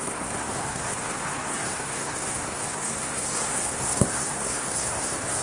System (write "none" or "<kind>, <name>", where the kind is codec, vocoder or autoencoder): codec, SNAC